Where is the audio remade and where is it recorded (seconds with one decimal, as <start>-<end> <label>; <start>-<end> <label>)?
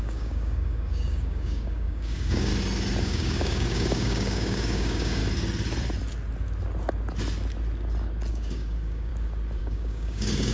0.0-2.5 remade; 2.5-3.0 recorded; 3.0-5.2 remade; 5.2-8.3 recorded; 8.3-9.1 remade; 9.1-9.6 recorded; 9.6-10.5 remade